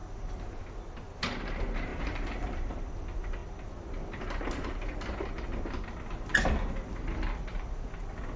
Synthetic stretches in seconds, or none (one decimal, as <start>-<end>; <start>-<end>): 1.9-2.8